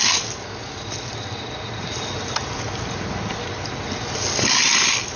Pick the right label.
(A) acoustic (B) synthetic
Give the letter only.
A